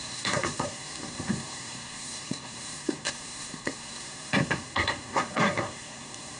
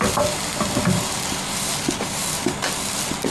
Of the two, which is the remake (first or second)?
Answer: first